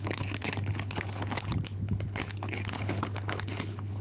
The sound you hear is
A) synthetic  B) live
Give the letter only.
A